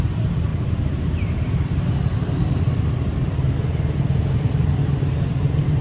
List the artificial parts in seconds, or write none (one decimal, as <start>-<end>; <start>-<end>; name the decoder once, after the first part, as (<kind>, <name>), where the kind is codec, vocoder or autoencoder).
none